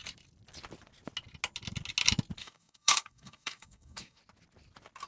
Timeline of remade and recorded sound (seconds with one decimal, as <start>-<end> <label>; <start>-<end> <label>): 0.0-2.4 recorded; 2.4-4.2 remade; 4.2-5.1 recorded